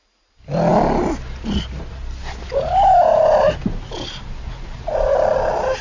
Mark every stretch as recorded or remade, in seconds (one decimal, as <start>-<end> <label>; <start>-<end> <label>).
0.0-5.8 recorded